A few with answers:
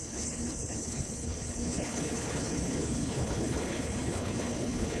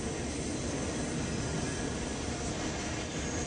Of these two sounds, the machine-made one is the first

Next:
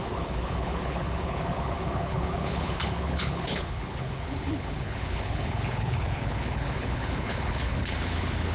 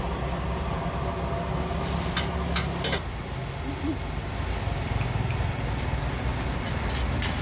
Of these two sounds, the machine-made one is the first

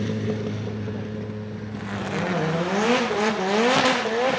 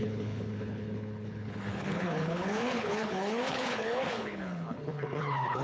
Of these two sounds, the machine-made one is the second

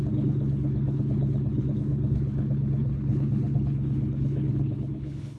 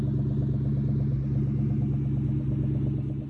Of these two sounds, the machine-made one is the first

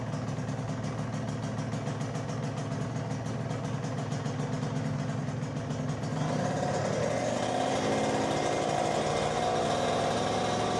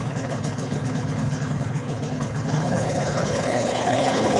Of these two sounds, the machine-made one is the second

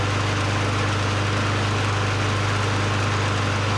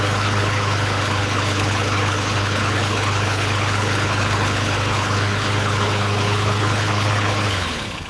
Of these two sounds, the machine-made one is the second